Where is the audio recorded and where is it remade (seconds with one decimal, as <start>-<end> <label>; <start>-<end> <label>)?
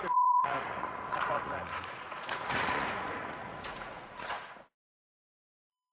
0.0-5.9 remade